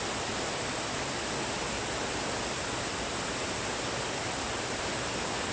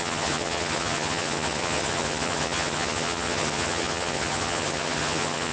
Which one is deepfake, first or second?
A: second